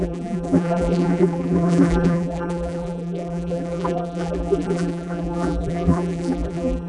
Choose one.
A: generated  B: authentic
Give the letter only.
A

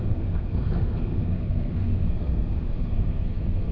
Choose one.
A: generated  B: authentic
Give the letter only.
A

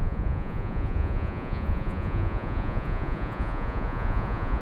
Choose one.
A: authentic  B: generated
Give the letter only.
B